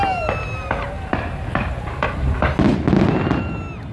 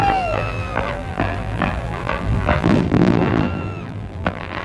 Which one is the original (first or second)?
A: first